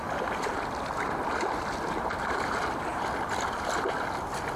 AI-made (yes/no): no